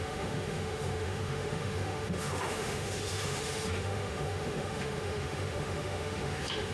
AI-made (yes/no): yes